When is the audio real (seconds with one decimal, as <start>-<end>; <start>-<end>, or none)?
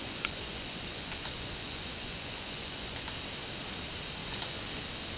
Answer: 3.1-4.2; 4.8-5.2